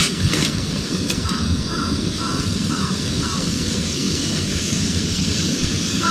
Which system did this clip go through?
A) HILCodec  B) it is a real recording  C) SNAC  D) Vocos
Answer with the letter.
C